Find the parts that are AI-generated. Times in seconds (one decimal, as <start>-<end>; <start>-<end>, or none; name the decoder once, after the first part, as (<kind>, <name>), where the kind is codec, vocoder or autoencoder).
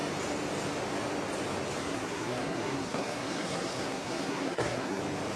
1.8-5.0 (codec, SNAC)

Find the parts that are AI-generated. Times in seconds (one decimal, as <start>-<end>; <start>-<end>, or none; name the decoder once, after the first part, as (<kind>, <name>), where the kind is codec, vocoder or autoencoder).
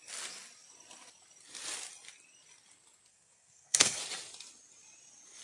3.1-4.0 (codec, SNAC)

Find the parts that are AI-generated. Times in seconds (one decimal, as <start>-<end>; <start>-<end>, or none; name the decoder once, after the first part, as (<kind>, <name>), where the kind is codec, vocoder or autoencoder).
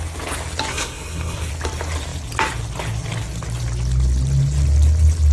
0.7-1.5 (codec, SNAC)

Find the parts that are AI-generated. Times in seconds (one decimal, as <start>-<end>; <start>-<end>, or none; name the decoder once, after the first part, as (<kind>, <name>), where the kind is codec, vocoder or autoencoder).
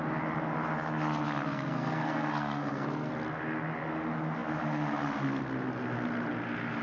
1.4-3.1 (codec, SNAC)